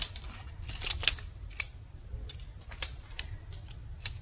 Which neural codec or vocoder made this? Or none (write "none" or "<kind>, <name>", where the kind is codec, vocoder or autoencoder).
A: none